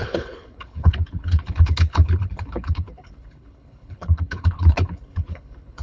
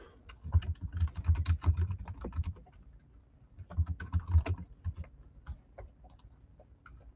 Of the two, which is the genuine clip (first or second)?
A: second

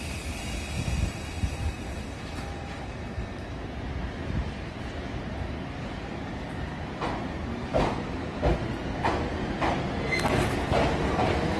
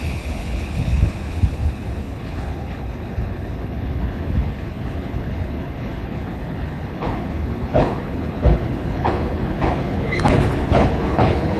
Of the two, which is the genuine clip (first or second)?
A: first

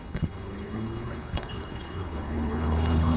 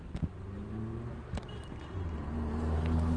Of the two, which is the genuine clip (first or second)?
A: second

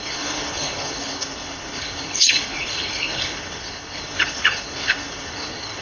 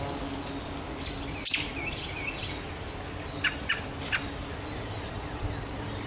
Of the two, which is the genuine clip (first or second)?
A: second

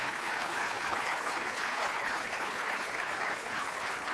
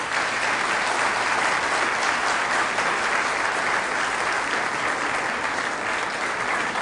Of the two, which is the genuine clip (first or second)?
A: second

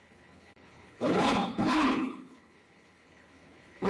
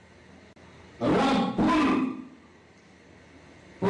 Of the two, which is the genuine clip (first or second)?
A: second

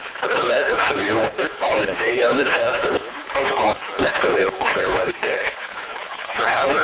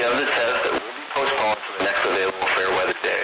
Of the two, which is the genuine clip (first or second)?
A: second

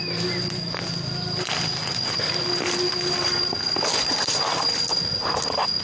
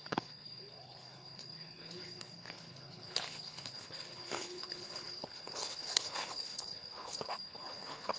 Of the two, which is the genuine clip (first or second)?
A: first